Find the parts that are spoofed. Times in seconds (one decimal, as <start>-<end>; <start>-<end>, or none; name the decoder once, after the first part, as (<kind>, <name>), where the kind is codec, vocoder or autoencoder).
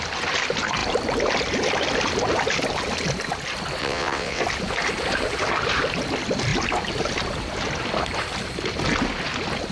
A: 3.8-4.4 (vocoder, WaveNeXt)